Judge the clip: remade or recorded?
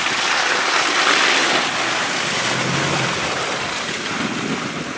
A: recorded